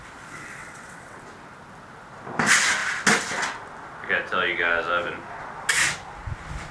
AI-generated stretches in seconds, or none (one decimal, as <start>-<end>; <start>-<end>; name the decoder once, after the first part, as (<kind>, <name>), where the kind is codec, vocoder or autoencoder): 0.6-1.2 (vocoder, WaveNeXt)